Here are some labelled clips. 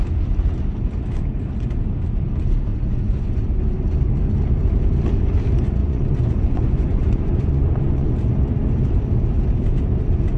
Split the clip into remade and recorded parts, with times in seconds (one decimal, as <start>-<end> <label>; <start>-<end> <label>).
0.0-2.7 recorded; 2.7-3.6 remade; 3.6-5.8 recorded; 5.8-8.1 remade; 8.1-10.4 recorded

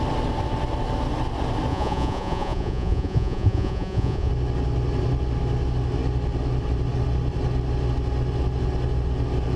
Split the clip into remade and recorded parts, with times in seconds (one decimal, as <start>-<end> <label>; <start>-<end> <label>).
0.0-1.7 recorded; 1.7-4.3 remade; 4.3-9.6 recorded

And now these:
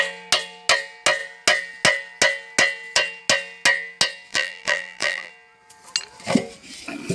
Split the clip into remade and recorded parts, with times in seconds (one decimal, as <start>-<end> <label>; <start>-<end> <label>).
0.0-4.3 recorded; 4.3-5.3 remade; 5.3-7.1 recorded

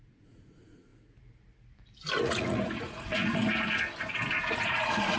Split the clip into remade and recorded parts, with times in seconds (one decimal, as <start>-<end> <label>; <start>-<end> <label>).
0.0-0.9 remade; 0.9-2.2 recorded; 2.2-3.4 remade; 3.4-4.4 recorded; 4.4-5.2 remade

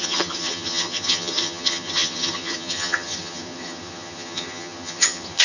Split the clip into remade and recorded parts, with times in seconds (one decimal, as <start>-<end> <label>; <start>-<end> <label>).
0.0-5.4 remade

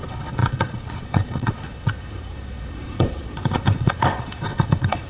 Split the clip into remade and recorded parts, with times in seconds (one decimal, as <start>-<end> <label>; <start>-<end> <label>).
0.0-5.1 remade

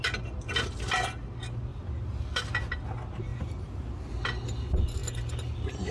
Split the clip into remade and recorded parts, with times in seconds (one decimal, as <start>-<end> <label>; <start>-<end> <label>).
0.0-1.7 recorded; 1.7-2.2 remade; 2.2-3.3 recorded; 3.3-4.1 remade; 4.1-5.9 recorded